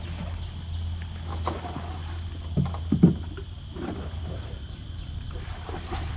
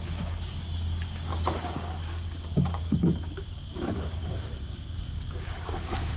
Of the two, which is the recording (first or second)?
first